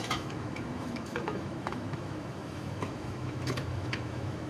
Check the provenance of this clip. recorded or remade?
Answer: remade